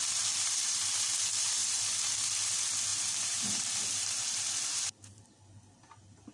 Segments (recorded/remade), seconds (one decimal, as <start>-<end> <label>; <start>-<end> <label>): 0.0-2.9 recorded; 2.9-5.3 remade; 5.3-6.3 recorded